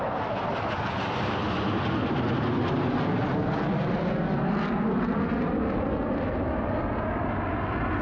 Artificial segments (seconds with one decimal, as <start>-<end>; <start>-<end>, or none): none